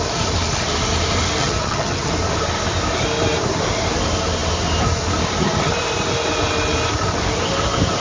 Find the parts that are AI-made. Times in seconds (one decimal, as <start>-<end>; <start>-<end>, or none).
1.4-2.1

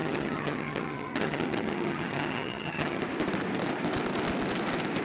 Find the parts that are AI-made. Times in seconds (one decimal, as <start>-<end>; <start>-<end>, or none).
0.0-3.0

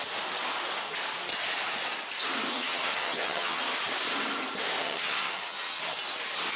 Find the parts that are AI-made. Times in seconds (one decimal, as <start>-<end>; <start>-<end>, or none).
2.5-3.6; 4.8-5.8

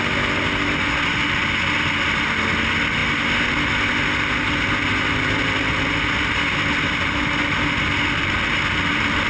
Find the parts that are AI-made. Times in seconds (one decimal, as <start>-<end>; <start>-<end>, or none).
none

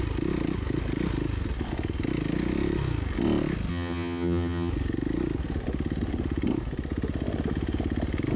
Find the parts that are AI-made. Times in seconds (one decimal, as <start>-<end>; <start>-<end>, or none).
3.7-4.7

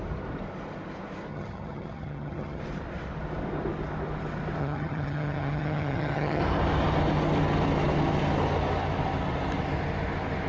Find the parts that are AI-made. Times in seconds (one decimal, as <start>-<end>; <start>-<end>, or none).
1.3-2.6; 4.6-6.4